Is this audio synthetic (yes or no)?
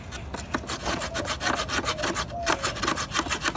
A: no